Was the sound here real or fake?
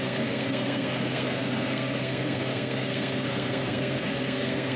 fake